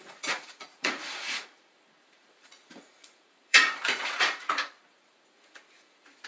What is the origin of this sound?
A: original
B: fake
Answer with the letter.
B